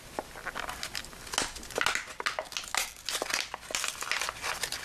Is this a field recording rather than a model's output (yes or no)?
yes